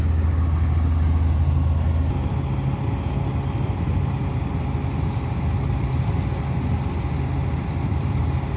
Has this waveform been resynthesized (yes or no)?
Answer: no